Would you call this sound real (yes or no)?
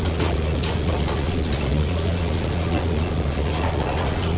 no